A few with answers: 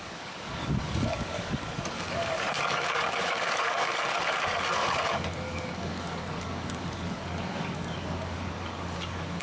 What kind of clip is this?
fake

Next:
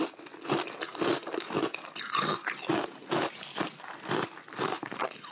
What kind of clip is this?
real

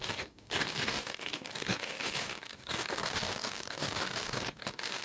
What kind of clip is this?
fake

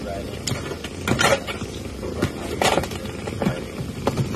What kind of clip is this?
real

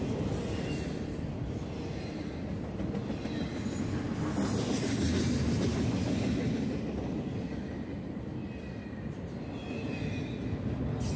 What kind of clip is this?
real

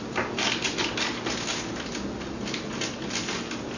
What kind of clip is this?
real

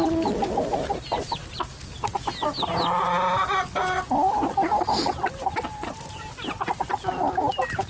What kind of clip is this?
real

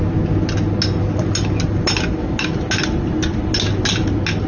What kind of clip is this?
real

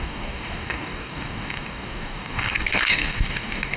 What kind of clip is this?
fake